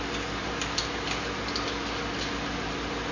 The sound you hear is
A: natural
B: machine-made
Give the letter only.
A